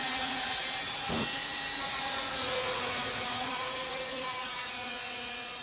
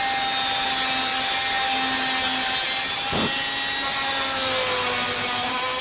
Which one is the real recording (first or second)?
second